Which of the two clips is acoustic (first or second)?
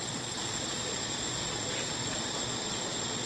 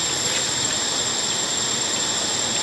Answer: second